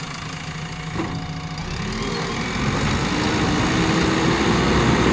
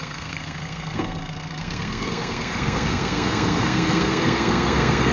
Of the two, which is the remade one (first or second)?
second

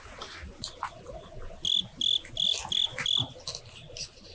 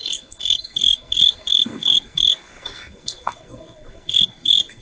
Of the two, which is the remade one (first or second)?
second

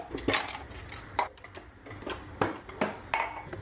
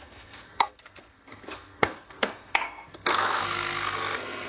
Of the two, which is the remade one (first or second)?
second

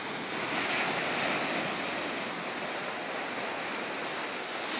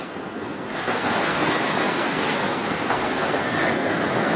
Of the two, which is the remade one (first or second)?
second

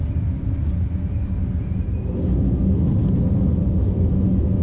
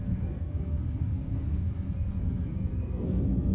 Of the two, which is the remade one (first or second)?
second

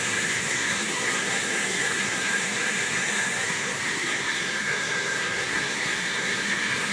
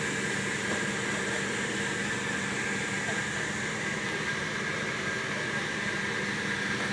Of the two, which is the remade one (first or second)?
first